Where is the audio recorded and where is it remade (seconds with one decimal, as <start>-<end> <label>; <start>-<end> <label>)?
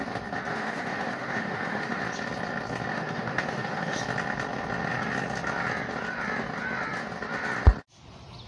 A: 0.0-0.5 recorded; 0.5-2.0 remade; 2.0-2.9 recorded; 2.9-4.0 remade; 4.0-8.5 recorded